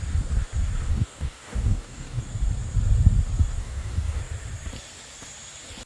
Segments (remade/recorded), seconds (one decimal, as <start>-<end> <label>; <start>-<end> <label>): 0.0-0.9 recorded; 0.9-2.2 remade; 2.2-3.6 recorded; 3.6-4.2 remade; 4.2-5.9 recorded